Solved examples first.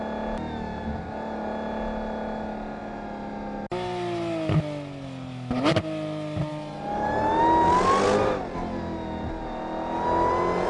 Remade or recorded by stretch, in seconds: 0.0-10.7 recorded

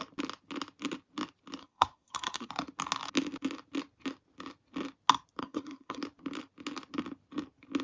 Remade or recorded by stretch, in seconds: 0.0-1.6 recorded; 1.6-2.5 remade; 2.5-5.4 recorded; 5.4-6.0 remade; 6.0-7.8 recorded

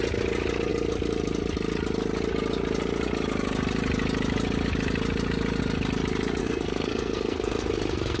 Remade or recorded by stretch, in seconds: 0.0-6.4 recorded; 6.4-8.2 remade